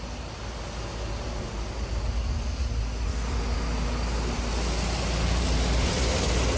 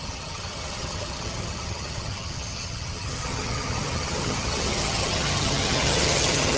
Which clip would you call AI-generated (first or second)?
second